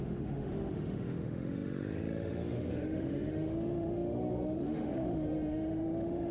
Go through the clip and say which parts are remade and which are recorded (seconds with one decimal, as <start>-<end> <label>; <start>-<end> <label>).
0.0-6.3 remade